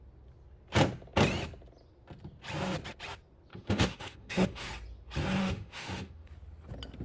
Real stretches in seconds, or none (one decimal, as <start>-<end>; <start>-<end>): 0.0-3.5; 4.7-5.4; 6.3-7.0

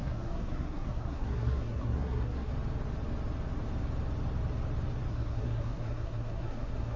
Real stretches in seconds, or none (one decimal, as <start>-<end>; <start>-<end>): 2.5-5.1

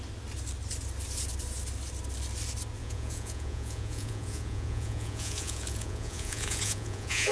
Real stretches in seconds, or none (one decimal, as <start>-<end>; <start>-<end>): 0.0-2.8

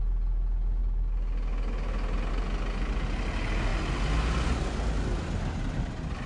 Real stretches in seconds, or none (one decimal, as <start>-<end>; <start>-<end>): 0.0-6.3

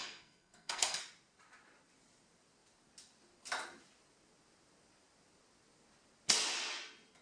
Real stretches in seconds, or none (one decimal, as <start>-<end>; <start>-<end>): 1.0-7.2

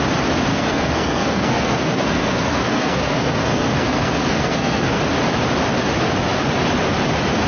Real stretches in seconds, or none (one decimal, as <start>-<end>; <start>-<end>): 0.0-0.5; 5.0-7.5